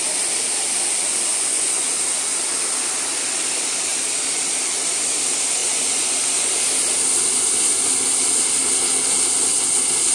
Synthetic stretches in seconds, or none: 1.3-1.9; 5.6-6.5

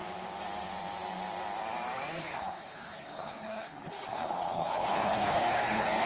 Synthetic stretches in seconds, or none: 2.2-6.1